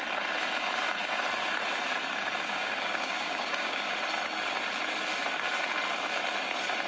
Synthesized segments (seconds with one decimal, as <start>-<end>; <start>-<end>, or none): 2.5-3.9